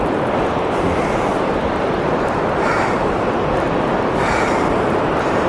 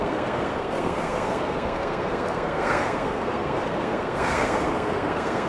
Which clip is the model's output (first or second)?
second